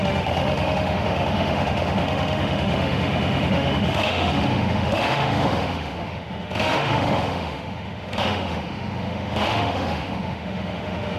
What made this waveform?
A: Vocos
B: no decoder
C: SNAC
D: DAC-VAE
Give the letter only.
D